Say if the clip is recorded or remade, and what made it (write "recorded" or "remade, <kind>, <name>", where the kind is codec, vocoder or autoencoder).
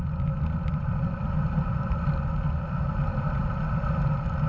recorded